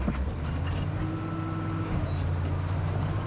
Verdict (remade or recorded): recorded